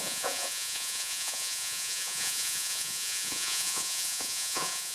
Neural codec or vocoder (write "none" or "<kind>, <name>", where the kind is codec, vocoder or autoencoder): vocoder, Vocos